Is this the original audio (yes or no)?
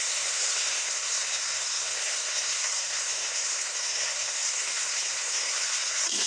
no